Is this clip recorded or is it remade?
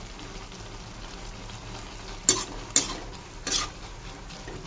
recorded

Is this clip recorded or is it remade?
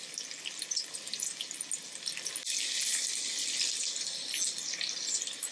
recorded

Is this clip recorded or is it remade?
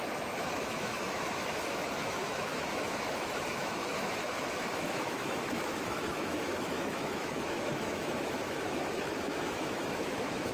remade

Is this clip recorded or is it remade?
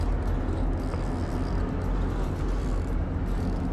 recorded